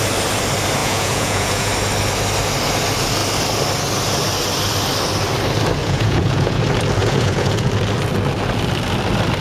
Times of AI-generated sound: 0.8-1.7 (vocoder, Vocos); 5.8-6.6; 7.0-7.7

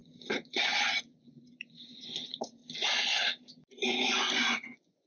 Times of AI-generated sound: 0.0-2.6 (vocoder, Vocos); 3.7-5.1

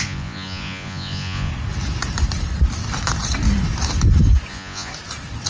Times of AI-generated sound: 0.0-1.5 (vocoder, Vocos); 4.5-4.9